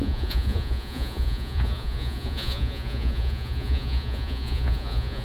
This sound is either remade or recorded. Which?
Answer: remade